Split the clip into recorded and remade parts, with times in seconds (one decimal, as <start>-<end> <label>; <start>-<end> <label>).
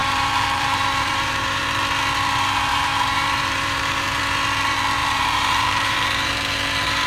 0.0-1.6 remade; 1.6-2.7 recorded; 2.7-4.2 remade; 4.2-5.0 recorded; 5.0-6.3 remade; 6.3-7.1 recorded